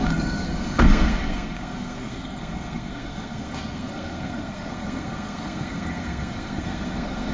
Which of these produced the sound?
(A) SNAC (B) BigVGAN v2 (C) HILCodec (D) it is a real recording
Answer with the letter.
A